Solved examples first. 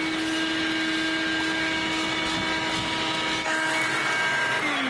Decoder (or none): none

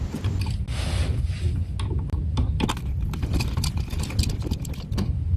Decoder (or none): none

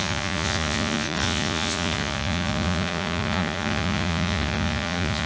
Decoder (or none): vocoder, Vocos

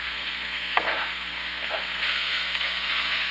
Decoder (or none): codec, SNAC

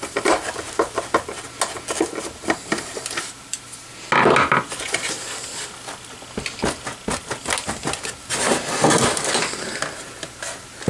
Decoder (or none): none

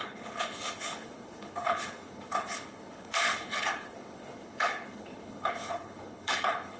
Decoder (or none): codec, HILCodec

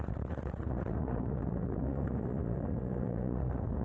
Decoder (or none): vocoder, Vocos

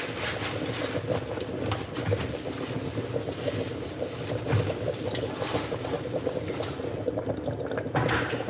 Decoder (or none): none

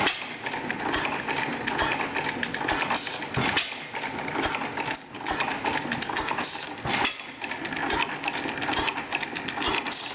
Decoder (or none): none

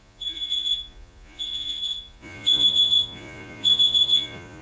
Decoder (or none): vocoder, Vocos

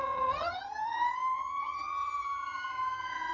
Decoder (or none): vocoder, HiFi-GAN